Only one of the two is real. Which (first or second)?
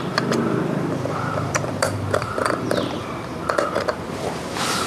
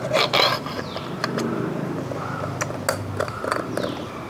second